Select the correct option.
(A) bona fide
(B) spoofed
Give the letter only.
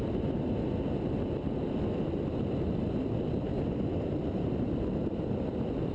A